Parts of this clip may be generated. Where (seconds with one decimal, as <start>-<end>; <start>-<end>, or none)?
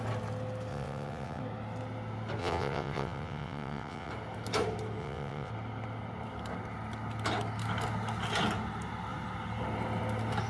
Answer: 0.7-1.4; 2.4-4.1; 5.0-5.5